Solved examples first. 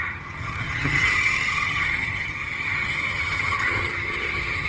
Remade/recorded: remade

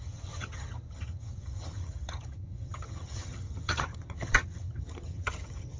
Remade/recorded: remade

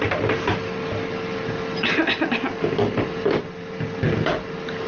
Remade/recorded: recorded